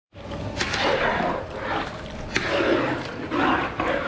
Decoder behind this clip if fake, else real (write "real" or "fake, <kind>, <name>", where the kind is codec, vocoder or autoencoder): real